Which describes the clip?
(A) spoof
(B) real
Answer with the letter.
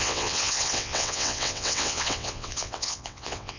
A